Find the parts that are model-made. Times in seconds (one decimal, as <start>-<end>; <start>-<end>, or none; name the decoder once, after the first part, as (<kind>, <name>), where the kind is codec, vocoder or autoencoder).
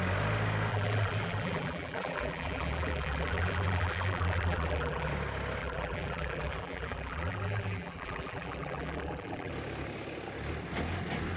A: 0.7-5.1 (vocoder, BigVGAN v2); 5.6-9.5